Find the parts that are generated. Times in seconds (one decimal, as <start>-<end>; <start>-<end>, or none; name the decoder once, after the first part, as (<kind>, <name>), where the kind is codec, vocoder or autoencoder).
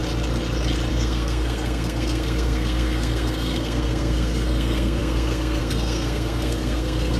0.9-7.2 (codec, SNAC)